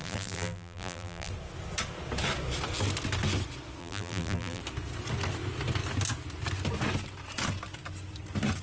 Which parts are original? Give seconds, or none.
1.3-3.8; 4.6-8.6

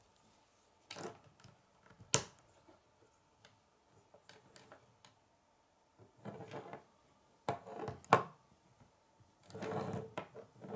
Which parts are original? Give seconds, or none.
0.0-10.8

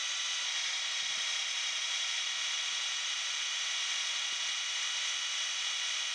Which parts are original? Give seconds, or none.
3.7-6.1

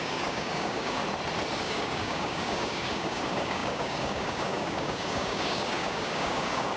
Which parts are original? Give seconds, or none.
1.0-1.6